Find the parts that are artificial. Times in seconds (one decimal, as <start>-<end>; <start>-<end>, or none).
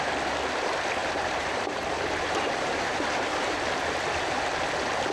1.0-3.7